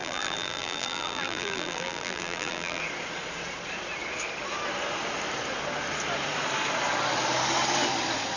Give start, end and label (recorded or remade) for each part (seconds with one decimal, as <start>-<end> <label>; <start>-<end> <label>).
0.0-2.8 remade; 2.8-8.4 recorded